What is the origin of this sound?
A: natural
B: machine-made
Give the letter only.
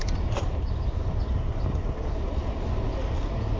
A